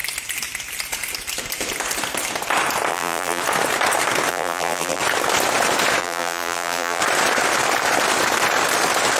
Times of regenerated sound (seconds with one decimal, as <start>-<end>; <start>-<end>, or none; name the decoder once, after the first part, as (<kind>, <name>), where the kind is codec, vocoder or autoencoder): 2.9-3.4 (vocoder, BigVGAN v2); 4.3-5.0; 6.0-7.0